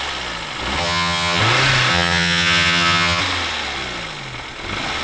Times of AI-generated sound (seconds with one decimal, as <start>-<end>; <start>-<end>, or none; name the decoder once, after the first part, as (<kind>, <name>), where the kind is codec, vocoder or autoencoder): 0.8-1.4 (vocoder, HiFi-GAN); 1.9-3.2